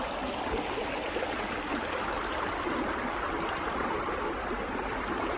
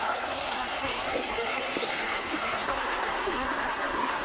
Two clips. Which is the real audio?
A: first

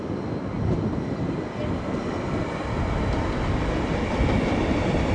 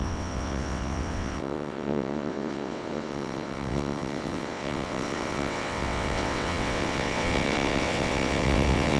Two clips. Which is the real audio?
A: first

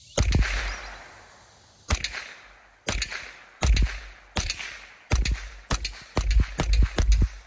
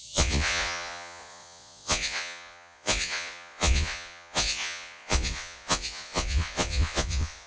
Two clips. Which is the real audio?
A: first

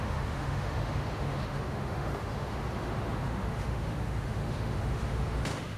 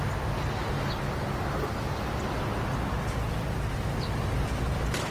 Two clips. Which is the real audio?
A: second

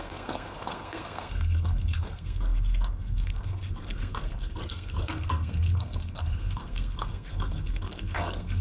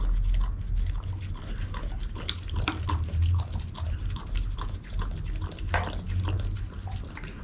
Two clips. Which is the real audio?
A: second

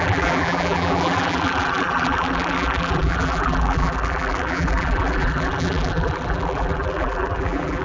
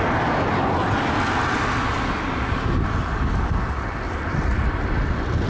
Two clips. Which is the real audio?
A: second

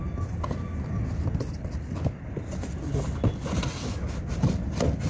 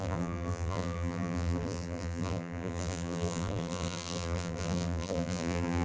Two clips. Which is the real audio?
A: first